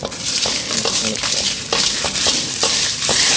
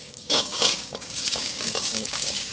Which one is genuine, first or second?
first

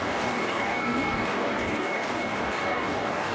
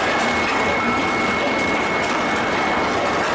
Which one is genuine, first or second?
second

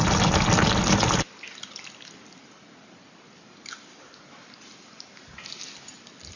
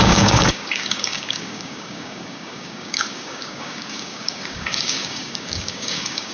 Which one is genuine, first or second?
first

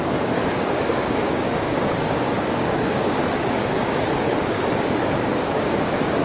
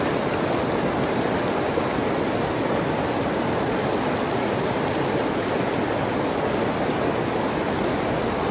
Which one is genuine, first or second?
second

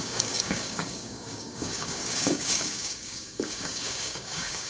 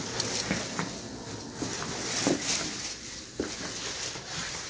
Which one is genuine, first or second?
second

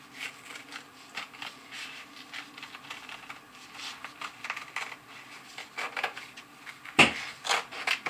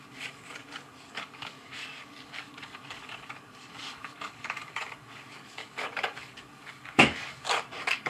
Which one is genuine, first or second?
first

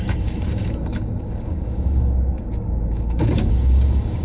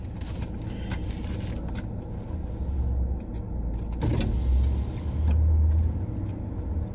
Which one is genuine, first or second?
second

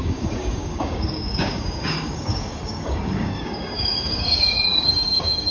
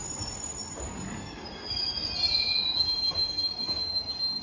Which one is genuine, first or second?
second